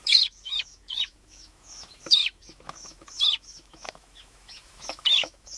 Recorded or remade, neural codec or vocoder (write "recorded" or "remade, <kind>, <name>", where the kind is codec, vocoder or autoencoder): remade, autoencoder, DAC-VAE